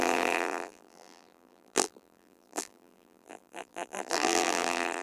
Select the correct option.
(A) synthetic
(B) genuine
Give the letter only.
A